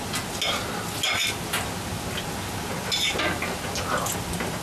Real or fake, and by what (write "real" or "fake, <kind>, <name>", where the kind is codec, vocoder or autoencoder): real